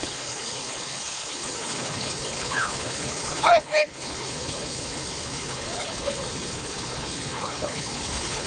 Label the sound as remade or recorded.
remade